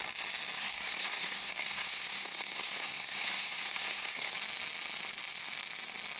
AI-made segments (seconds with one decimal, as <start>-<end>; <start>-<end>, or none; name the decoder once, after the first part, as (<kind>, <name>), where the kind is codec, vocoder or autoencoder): 0.6-4.3 (codec, SNAC)